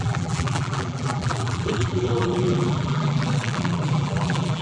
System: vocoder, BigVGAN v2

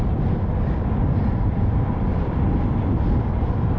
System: vocoder, BigVGAN v2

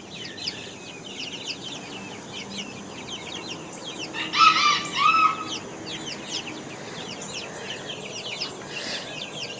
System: none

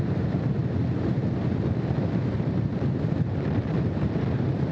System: vocoder, BigVGAN v2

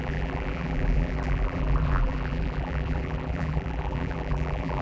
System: vocoder, BigVGAN v2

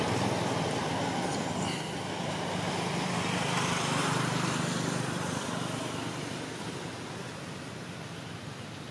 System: vocoder, BigVGAN v2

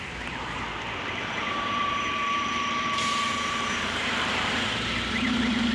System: vocoder, BigVGAN v2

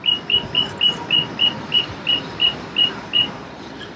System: vocoder, BigVGAN v2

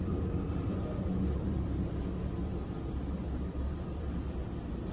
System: vocoder, BigVGAN v2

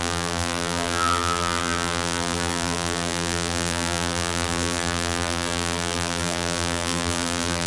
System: vocoder, BigVGAN v2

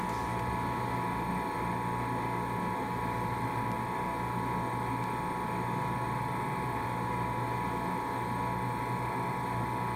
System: none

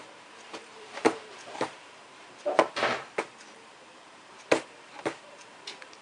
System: vocoder, BigVGAN v2